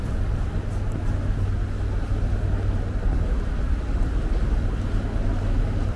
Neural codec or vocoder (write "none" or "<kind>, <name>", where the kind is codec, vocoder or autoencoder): none